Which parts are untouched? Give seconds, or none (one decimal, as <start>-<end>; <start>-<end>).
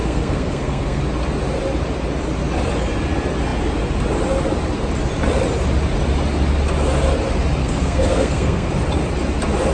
1.0-7.6; 8.7-9.7